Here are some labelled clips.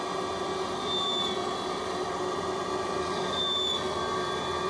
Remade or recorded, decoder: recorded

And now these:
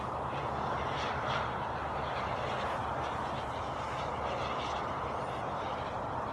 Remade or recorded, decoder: recorded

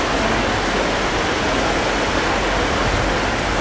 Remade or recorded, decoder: recorded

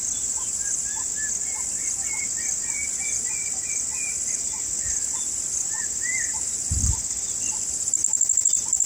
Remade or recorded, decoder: remade, vocoder, BigVGAN v2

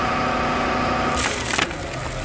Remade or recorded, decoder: recorded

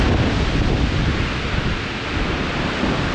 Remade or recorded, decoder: recorded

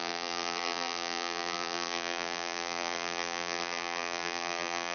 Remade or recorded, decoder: remade, vocoder, BigVGAN v2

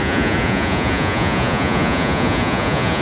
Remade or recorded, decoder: remade, vocoder, Vocos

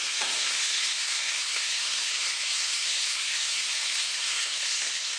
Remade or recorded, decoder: remade, codec, SNAC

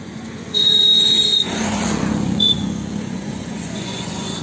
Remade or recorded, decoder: remade, vocoder, Vocos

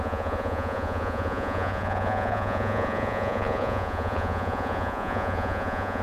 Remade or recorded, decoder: remade, vocoder, Vocos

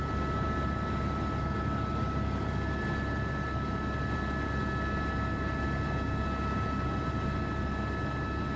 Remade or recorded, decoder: recorded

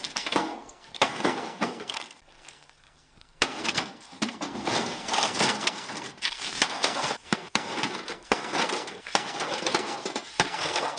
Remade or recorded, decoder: remade, codec, SNAC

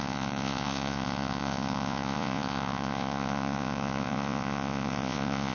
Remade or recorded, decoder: remade, vocoder, Vocos